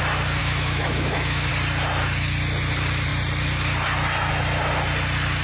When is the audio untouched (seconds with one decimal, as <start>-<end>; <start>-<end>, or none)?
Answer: 0.0-0.4; 1.5-5.4